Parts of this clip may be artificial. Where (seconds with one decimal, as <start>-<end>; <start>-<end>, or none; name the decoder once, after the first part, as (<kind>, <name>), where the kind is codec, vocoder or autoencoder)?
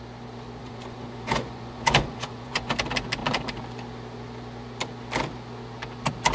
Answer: 0.6-2.7 (vocoder, Vocos)